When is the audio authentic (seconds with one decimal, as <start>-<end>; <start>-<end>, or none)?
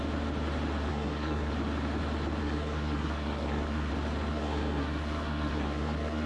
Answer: 0.0-0.9; 1.5-2.4; 3.9-4.3